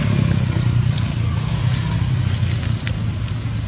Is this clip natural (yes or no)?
yes